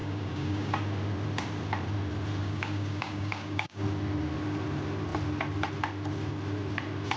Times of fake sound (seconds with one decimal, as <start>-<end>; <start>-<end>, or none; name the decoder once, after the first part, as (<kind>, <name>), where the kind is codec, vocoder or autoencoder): 0.0-0.7 (codec, DAC); 2.4-3.8

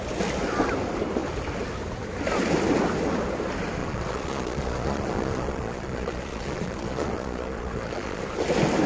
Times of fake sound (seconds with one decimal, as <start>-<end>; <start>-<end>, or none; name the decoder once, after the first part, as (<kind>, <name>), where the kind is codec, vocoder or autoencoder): 3.8-8.2 (vocoder, Vocos)